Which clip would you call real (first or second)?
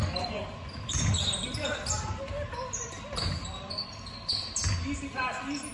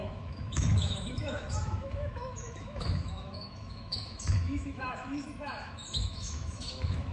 first